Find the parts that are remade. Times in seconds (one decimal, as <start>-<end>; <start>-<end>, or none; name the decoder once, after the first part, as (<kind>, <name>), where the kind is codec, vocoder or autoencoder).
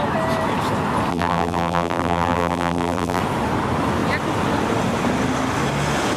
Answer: 1.1-3.2 (vocoder, BigVGAN v2)